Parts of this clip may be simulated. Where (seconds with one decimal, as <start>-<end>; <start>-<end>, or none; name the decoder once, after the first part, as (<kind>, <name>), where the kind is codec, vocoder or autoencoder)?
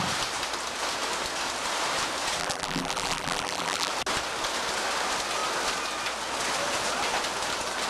2.4-3.9 (vocoder, BigVGAN v2)